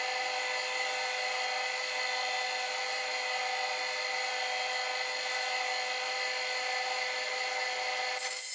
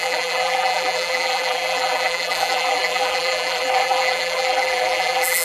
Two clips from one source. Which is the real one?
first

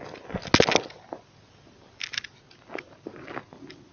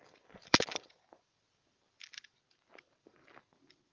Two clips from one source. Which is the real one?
first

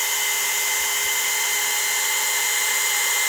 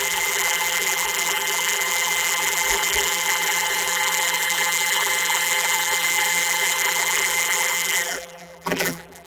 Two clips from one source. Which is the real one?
first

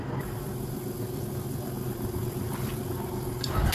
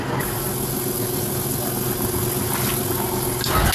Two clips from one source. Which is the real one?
second